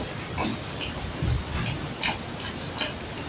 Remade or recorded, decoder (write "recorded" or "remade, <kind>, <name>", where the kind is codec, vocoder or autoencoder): recorded